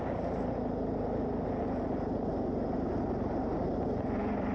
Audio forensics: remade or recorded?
recorded